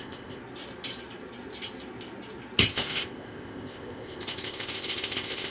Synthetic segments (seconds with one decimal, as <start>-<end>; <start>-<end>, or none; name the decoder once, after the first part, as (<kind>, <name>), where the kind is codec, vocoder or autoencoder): 0.0-0.4 (codec, ZipCodec); 2.7-5.5